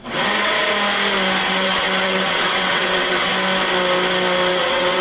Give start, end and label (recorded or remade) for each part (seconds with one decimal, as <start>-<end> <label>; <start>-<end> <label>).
0.0-0.6 remade; 0.6-1.4 recorded; 1.4-3.3 remade; 3.3-4.5 recorded; 4.5-5.0 remade